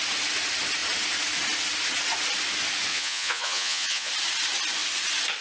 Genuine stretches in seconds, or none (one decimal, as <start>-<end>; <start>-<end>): 0.0-2.9; 4.1-5.4